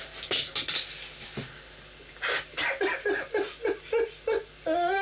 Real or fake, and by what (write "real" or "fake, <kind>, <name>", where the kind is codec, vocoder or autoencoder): real